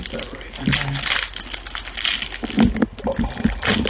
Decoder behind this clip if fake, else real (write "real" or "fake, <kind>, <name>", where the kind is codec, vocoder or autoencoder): real